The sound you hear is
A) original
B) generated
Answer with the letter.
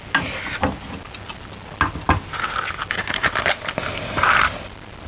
A